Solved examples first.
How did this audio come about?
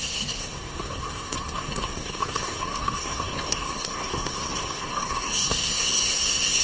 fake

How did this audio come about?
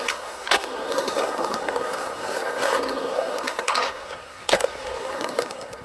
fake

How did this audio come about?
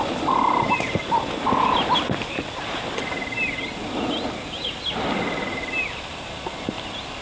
real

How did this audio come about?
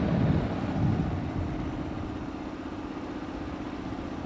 real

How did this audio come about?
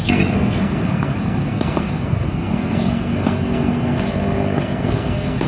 fake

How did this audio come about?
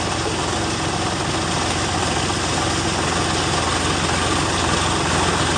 real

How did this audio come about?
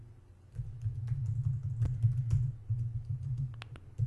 real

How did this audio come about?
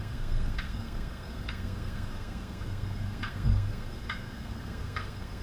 fake